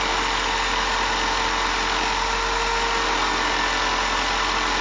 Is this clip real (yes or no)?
yes